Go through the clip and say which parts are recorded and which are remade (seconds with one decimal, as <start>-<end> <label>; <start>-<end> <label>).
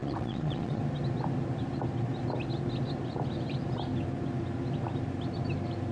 0.0-0.8 remade; 0.8-5.9 recorded